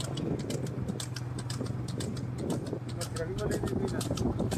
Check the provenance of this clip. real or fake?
real